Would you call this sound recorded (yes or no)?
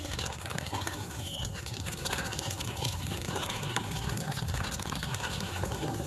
no